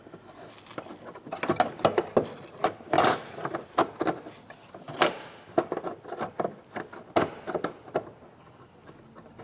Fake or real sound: real